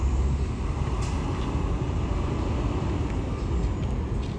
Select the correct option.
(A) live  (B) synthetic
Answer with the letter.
A